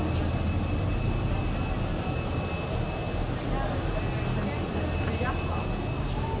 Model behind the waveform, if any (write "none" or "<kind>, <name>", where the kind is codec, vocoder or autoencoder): none